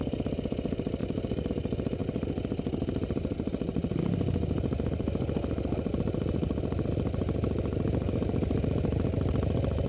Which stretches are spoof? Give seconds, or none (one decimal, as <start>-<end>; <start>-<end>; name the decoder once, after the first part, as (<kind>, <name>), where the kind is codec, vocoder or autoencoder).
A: none